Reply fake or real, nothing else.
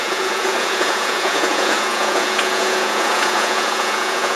fake